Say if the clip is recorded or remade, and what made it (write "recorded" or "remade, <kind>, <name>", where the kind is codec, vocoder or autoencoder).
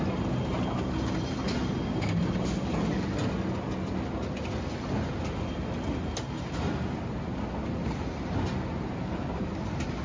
recorded